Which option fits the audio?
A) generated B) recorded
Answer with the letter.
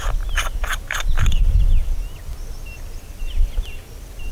B